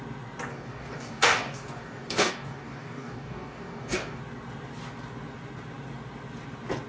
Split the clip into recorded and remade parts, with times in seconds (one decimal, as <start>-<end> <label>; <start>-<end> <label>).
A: 0.0-0.5 recorded; 0.5-4.2 remade; 4.2-6.9 recorded